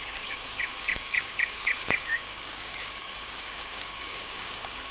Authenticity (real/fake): fake